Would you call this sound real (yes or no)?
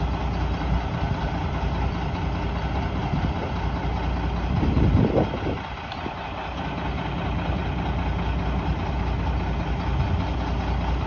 yes